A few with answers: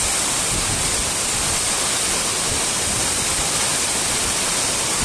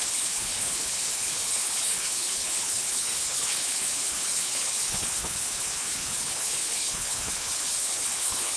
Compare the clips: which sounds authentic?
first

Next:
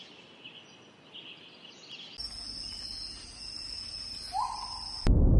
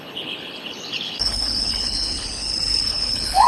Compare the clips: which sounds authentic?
first